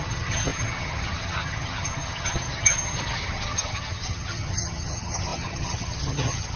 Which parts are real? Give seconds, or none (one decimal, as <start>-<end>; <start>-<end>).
none